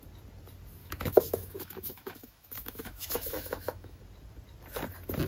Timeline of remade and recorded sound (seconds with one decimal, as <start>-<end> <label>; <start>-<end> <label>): 0.0-0.8 recorded; 0.8-4.0 remade; 4.0-5.3 recorded